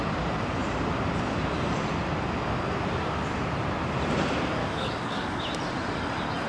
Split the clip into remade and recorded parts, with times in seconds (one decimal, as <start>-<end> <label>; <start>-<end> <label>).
0.0-4.6 recorded; 4.6-5.4 remade; 5.4-6.5 recorded